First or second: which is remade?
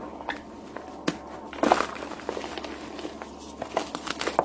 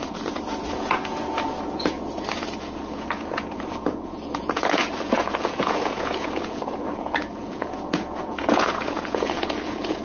second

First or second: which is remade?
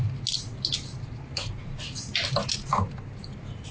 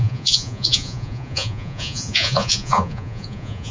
second